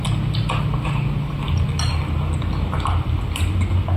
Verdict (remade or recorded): recorded